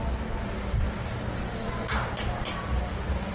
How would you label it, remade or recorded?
recorded